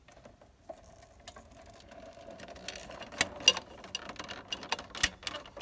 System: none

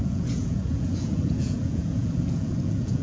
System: vocoder, Vocos